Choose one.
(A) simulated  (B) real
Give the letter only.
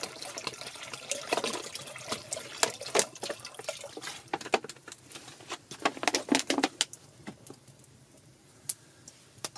B